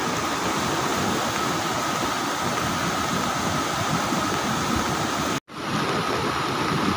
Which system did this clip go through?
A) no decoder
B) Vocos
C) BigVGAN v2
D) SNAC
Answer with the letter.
A